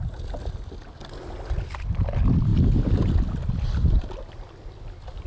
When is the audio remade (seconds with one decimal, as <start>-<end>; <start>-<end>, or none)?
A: none